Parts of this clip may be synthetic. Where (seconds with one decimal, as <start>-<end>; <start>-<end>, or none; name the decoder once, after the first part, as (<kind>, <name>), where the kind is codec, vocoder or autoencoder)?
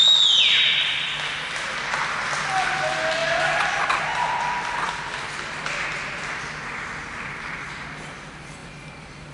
none